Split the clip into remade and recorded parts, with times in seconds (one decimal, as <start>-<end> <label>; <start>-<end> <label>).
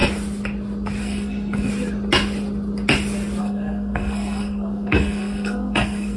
0.0-1.0 recorded; 1.0-1.7 remade; 1.7-3.4 recorded; 3.4-6.2 remade